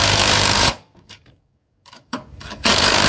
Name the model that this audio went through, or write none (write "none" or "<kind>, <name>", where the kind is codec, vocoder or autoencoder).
codec, DAC